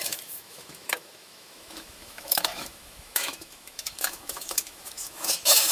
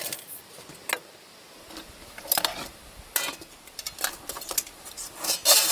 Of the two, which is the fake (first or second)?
first